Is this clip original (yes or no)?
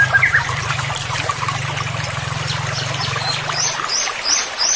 yes